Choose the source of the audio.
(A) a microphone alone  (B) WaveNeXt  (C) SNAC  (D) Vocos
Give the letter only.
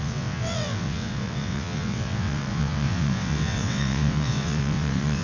B